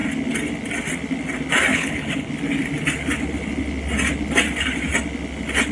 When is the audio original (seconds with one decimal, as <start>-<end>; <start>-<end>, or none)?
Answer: 0.0-1.7; 2.3-5.7

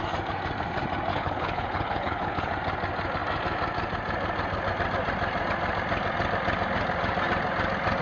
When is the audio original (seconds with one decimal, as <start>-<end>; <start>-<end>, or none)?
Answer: 0.0-1.1; 2.5-8.0